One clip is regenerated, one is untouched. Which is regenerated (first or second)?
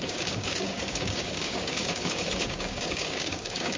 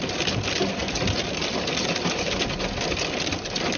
first